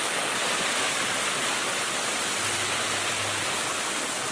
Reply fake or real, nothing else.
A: real